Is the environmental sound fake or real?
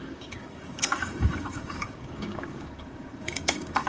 fake